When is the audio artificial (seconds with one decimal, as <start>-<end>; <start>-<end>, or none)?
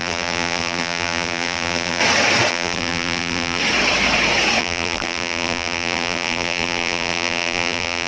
0.0-2.0; 2.5-3.6; 4.6-8.1